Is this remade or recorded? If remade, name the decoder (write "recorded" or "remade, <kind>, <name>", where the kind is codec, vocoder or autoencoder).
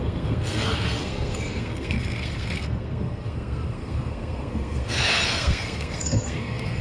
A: remade, codec, SNAC